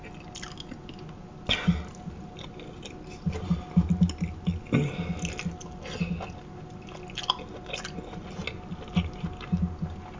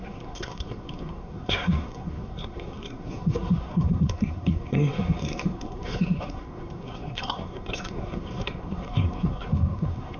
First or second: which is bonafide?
first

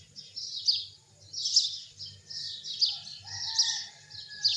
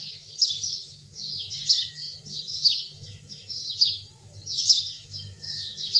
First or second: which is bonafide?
first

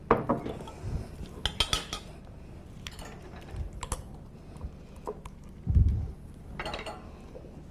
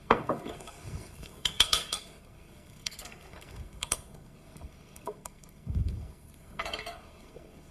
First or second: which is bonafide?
first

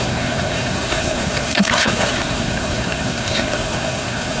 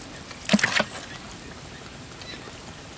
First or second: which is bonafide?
second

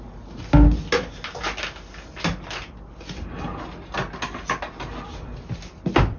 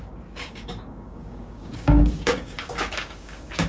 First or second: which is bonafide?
first